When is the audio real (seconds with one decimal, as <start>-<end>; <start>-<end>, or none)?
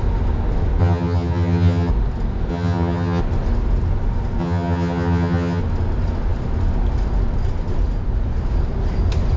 0.0-0.8; 1.9-2.5; 3.2-4.4; 5.6-9.4